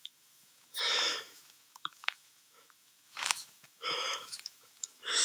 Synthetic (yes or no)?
yes